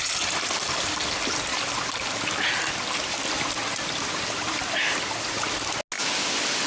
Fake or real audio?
real